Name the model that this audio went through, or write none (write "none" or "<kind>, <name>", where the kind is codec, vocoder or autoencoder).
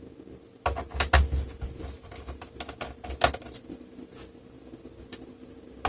none